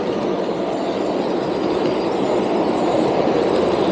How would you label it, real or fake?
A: real